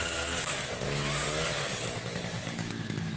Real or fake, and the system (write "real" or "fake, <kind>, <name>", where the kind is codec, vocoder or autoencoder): fake, codec, DAC